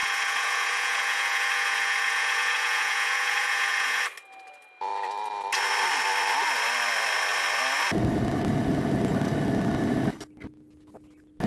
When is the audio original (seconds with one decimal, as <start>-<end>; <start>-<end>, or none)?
4.0-11.5